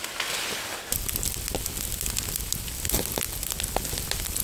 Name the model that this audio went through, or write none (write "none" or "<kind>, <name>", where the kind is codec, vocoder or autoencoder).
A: none